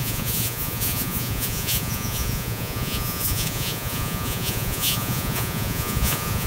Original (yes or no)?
no